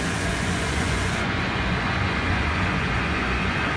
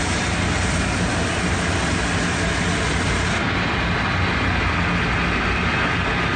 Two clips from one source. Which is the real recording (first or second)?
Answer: second